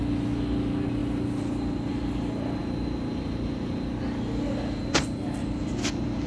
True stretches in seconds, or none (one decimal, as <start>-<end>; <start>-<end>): 0.0-6.3